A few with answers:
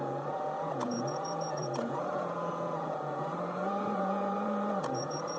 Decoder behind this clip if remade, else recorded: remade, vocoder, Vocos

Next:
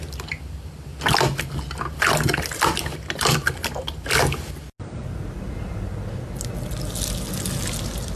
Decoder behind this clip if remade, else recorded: recorded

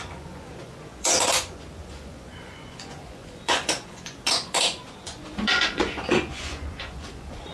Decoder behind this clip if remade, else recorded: remade, vocoder, Vocos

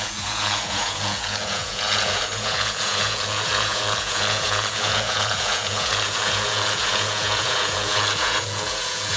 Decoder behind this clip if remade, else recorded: remade, vocoder, Vocos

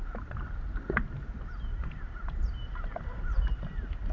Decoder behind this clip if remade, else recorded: recorded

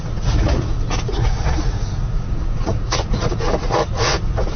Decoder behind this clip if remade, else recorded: remade, vocoder, Vocos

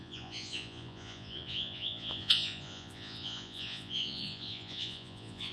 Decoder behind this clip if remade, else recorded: remade, vocoder, Vocos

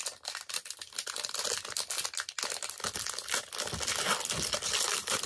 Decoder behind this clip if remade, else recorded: recorded